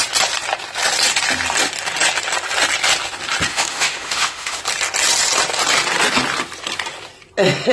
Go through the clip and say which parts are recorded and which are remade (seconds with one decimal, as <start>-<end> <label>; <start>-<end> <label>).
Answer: 0.0-3.5 recorded; 3.5-4.6 remade; 4.6-7.7 recorded